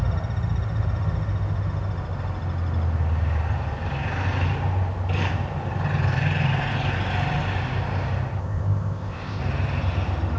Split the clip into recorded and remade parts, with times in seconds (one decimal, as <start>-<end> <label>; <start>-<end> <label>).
0.0-8.4 recorded; 8.4-9.4 remade; 9.4-10.4 recorded